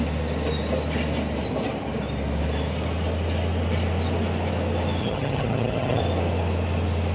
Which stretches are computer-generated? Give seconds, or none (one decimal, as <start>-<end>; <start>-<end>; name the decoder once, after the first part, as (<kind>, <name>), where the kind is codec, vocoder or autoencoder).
5.0-6.0 (vocoder, HiFi-GAN)